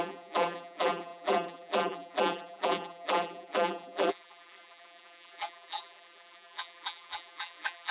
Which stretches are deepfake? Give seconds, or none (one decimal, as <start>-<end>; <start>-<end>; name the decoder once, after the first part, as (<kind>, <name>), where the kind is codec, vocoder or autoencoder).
0.0-7.9 (vocoder, BigVGAN v2)